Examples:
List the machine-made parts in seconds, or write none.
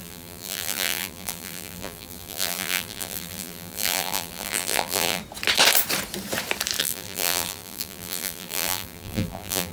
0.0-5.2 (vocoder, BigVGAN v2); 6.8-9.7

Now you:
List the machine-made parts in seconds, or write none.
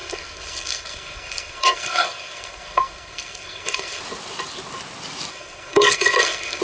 0.0-4.0 (codec, SNAC); 5.3-6.6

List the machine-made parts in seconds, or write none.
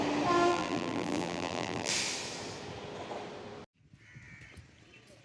0.5-1.9 (vocoder, BigVGAN v2)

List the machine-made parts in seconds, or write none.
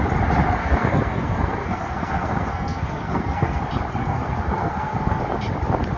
0.6-3.6 (codec, SNAC); 4.0-5.2